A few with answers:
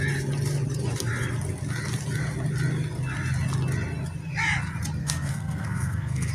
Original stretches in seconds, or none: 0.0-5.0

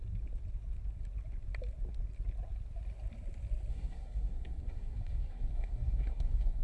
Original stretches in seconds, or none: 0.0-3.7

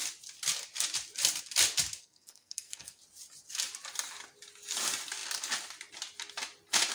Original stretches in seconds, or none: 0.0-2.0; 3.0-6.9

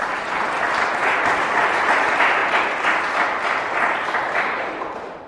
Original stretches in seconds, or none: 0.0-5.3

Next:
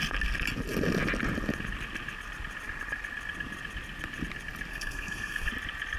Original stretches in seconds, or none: 0.0-4.7; 5.5-6.0

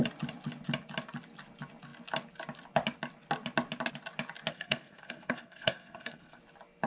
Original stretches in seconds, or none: 0.0-4.5; 6.4-6.9

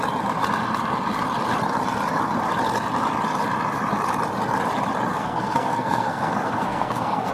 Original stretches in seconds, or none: 0.0-5.1

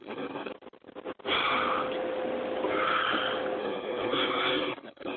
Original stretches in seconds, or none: 0.5-3.6